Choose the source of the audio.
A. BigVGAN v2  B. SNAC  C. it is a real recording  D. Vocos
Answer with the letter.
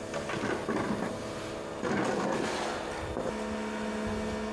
C